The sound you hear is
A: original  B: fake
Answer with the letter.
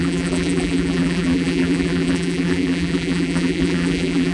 B